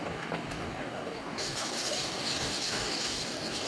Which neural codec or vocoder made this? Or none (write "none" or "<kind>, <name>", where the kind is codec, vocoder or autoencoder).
codec, DAC